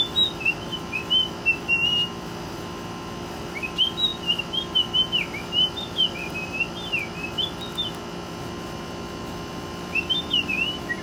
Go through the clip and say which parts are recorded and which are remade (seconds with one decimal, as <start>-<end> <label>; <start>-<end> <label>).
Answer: 0.0-11.0 recorded